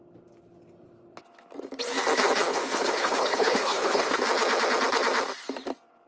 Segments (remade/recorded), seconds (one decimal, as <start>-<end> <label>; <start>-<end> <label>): 0.0-2.5 recorded; 2.5-4.2 remade; 4.2-6.1 recorded